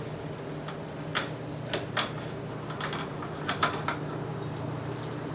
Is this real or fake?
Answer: real